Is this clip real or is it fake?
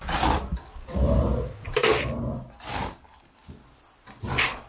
real